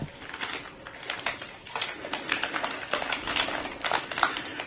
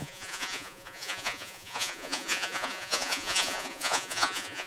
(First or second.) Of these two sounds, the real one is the first